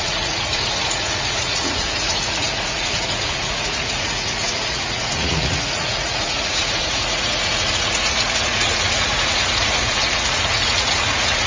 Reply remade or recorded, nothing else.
remade